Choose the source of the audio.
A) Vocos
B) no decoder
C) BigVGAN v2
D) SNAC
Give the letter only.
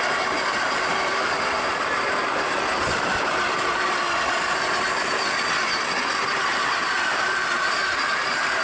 B